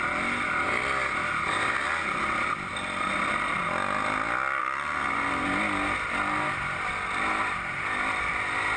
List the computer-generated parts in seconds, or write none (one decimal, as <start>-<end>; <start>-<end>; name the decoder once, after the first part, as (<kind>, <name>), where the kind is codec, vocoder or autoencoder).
none

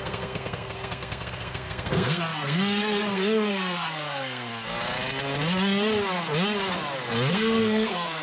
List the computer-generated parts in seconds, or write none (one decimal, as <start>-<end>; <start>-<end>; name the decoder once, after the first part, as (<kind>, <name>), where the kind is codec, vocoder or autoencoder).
0.0-4.5 (codec, SNAC); 7.3-8.2

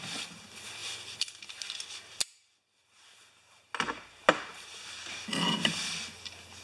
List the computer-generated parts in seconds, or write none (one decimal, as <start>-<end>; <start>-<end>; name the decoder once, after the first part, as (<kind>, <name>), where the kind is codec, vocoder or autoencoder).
none

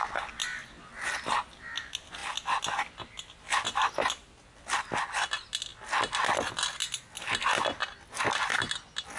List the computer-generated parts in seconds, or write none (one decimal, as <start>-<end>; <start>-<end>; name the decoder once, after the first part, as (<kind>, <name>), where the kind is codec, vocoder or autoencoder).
none

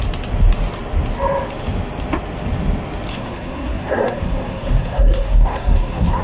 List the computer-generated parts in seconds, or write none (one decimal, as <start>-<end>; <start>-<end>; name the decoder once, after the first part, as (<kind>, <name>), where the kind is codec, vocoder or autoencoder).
3.1-6.2 (codec, SNAC)

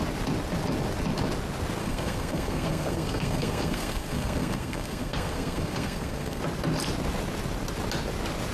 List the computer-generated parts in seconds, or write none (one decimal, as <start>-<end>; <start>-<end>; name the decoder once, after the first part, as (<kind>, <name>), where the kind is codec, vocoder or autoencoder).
1.8-6.4 (codec, SNAC)

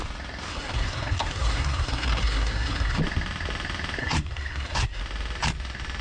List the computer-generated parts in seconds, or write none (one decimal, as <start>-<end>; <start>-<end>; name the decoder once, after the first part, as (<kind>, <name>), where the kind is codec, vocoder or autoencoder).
0.5-3.0 (codec, SNAC); 4.0-5.0